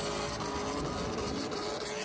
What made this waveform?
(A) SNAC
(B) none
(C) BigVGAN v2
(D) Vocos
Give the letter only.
B